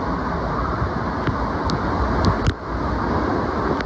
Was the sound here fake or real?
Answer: real